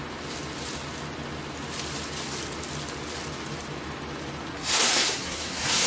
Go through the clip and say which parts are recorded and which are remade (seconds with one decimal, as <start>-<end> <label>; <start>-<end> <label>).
0.0-4.5 recorded; 4.5-5.9 remade